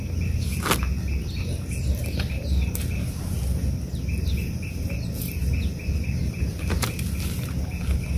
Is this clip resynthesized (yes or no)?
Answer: no